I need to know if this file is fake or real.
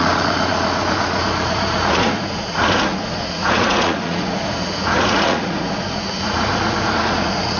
fake